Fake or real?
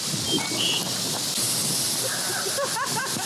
real